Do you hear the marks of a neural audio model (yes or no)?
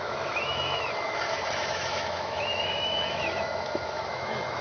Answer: yes